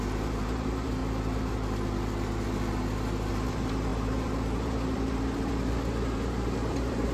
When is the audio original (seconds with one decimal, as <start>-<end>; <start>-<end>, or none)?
1.0-3.3